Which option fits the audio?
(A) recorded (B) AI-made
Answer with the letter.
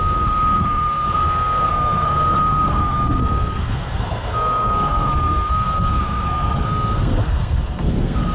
B